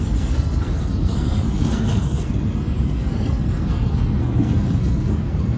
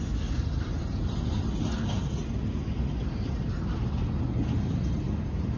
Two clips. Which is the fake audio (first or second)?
first